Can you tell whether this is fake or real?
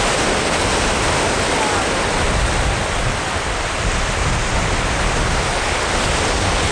real